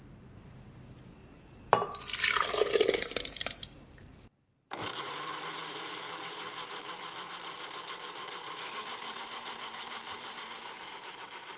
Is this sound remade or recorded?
remade